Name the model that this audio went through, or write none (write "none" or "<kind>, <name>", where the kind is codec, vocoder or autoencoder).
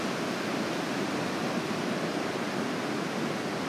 none